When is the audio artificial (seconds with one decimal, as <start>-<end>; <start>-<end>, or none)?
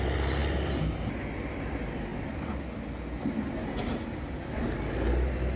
none